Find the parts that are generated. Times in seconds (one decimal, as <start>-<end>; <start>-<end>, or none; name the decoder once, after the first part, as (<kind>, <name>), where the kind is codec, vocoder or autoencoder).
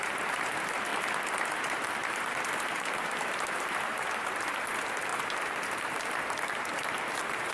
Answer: 0.0-0.9 (vocoder, BigVGAN v2); 1.6-7.5